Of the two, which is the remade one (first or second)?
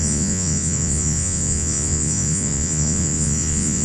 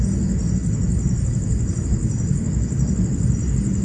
first